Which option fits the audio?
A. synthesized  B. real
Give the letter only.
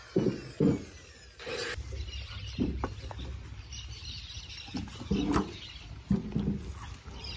B